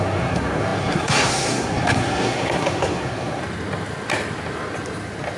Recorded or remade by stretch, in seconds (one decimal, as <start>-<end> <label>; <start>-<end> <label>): 0.0-3.4 remade; 3.4-5.4 recorded